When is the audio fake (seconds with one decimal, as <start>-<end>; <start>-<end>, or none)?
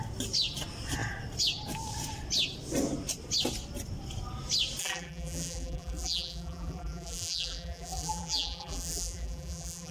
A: 4.8-9.9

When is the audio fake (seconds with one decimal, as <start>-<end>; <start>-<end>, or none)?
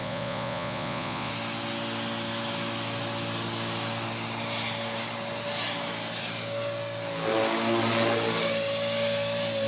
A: 0.0-1.3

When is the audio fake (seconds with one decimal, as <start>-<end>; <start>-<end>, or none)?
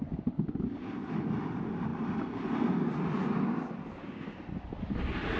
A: none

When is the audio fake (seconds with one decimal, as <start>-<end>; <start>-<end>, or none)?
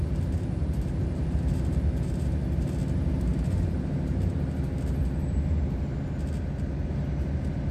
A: 0.6-2.6; 3.3-3.9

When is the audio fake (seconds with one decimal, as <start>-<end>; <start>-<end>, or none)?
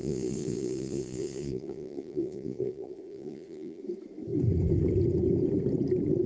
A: 0.0-3.8